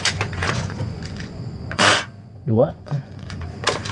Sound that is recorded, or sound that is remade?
remade